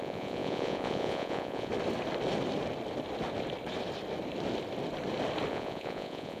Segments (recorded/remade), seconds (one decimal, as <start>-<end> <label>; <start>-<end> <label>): 0.0-1.7 remade; 1.7-5.5 recorded; 5.5-6.4 remade